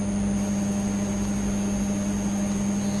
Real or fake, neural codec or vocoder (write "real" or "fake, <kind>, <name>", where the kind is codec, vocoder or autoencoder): real